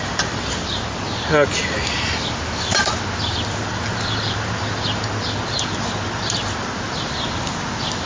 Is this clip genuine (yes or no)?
yes